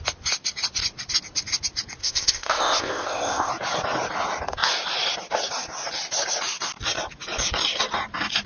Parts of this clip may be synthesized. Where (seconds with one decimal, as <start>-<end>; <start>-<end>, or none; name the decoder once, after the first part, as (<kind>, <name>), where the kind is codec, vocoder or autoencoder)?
2.0-3.5 (codec, ZipCodec)